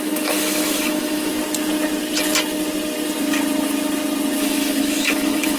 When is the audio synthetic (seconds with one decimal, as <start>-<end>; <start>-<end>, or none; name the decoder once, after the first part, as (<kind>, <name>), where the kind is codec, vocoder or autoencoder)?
0.0-1.3 (autoencoder, DAC-VAE); 4.4-5.6